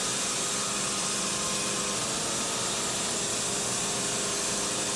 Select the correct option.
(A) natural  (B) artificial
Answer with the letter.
A